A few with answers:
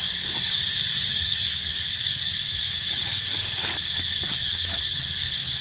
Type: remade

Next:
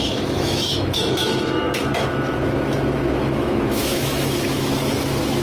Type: remade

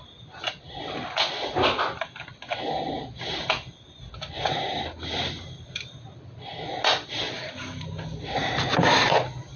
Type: recorded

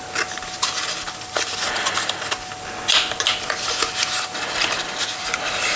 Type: recorded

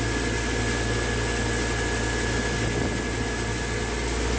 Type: recorded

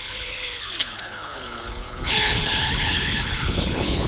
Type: remade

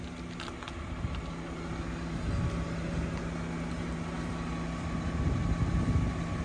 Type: recorded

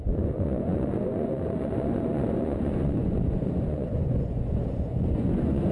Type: remade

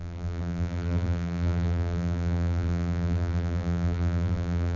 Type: remade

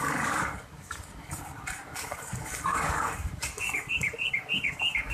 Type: remade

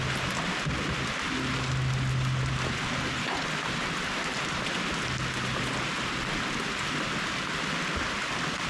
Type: recorded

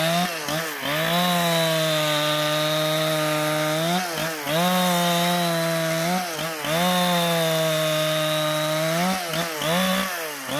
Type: recorded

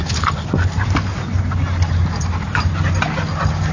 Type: recorded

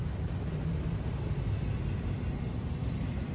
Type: recorded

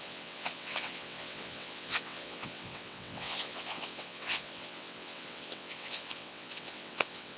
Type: remade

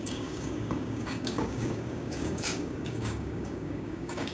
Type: remade